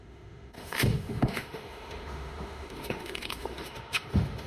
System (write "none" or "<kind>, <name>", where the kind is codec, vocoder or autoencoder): autoencoder, DAC-VAE